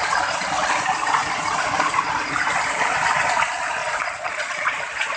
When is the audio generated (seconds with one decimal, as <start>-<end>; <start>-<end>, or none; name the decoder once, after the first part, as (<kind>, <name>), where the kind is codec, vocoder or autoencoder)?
3.8-4.7 (vocoder, Vocos)